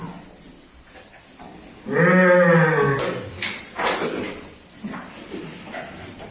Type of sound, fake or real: real